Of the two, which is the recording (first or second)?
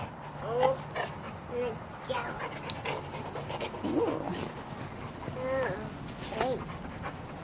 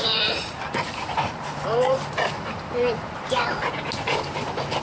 first